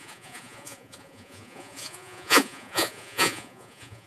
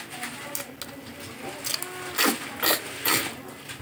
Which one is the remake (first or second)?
first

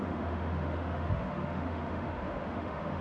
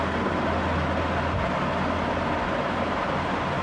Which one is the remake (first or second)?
first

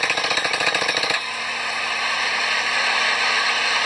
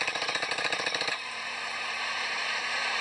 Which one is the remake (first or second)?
second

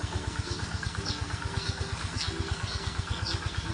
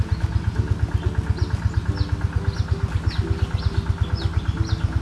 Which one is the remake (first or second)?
first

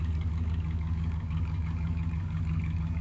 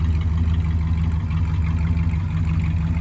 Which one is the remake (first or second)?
first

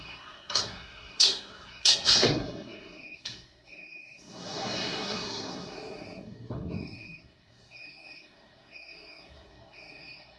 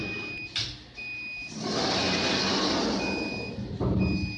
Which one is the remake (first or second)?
first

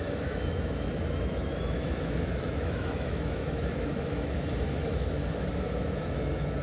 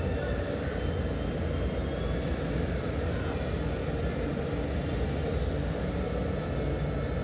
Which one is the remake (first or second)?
first